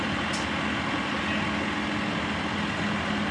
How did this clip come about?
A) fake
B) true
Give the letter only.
B